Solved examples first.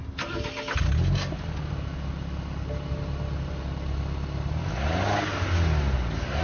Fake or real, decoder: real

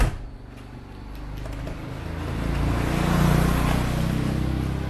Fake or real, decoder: real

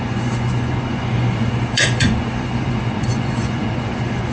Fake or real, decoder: fake, vocoder, Vocos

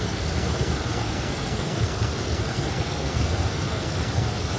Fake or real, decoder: fake, codec, SNAC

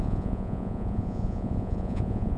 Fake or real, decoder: fake, vocoder, Vocos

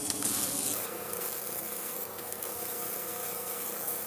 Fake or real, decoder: fake, codec, SNAC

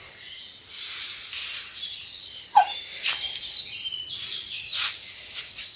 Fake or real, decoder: real